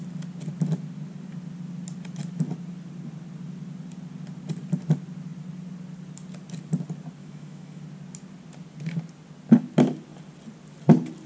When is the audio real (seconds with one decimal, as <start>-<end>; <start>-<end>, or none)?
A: 0.0-7.2; 7.8-11.3

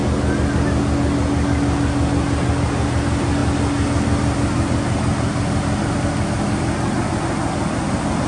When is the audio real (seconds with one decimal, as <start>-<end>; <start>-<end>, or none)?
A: 0.0-8.3